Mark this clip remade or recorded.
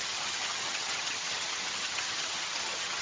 remade